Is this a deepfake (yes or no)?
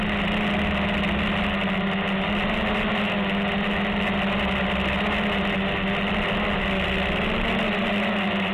no